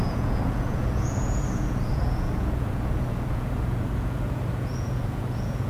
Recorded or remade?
remade